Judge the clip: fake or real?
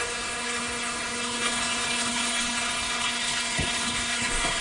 fake